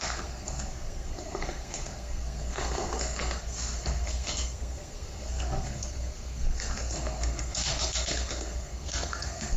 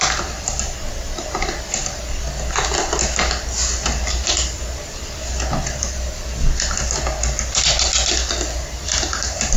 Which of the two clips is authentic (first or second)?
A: second